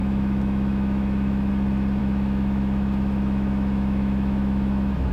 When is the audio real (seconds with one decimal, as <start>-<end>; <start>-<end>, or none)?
1.5-2.0